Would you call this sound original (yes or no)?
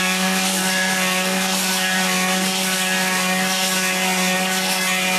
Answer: no